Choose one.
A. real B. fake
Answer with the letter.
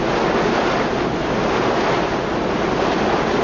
A